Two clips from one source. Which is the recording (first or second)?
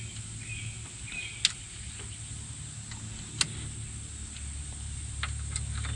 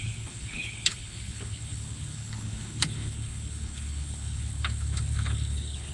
first